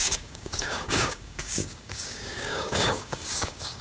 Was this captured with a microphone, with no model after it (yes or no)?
no